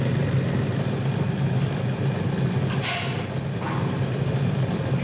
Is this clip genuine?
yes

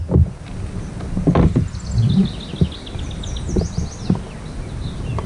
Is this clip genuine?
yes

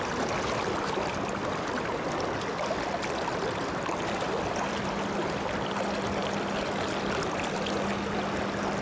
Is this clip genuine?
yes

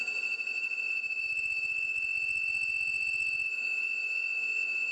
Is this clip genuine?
yes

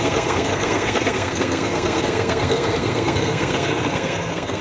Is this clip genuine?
no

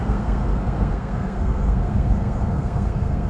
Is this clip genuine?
no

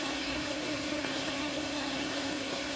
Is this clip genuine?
no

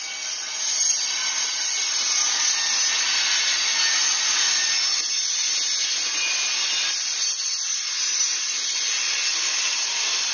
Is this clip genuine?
yes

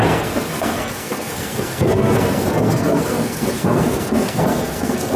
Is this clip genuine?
no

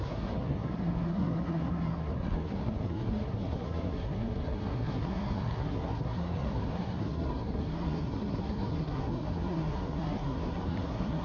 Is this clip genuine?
no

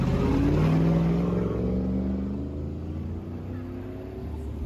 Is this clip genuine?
yes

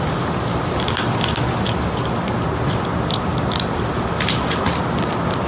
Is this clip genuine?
yes